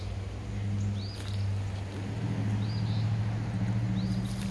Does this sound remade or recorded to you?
recorded